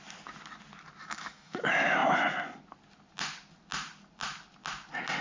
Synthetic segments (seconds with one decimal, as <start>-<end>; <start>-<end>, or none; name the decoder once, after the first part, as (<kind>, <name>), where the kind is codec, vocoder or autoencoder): 1.0-1.6 (autoencoder, DAC-VAE)